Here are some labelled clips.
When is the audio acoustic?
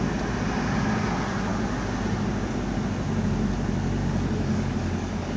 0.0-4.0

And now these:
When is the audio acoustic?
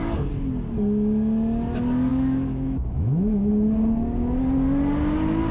0.0-2.1; 3.5-5.5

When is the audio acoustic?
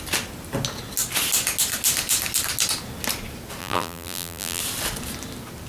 0.0-3.6; 4.6-5.7